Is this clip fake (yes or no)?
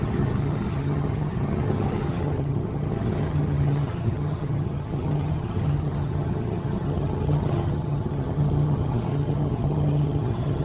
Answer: yes